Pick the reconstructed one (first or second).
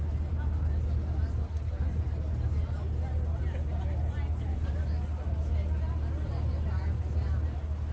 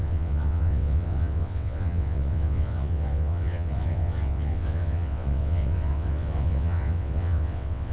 second